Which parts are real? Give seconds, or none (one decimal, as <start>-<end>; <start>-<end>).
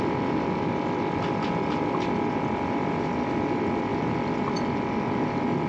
0.0-5.7